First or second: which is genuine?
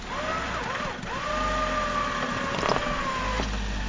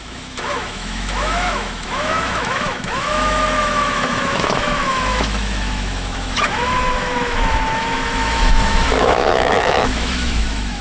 first